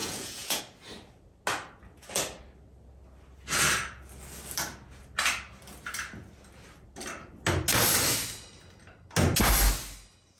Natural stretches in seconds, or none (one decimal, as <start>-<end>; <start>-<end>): 0.6-10.4